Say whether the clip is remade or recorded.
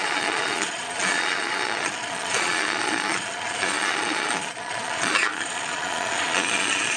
remade